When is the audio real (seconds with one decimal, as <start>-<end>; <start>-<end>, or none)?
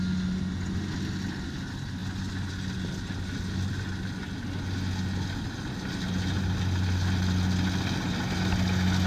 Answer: 0.0-9.1